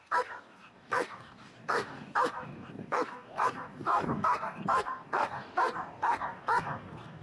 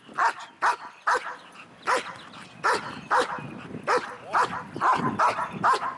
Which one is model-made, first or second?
first